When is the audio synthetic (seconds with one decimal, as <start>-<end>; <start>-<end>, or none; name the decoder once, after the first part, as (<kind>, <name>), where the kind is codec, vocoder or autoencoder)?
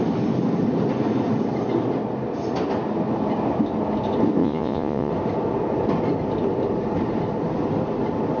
4.4-5.1 (vocoder, Vocos)